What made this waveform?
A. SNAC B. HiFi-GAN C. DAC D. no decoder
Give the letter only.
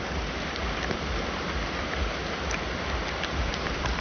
D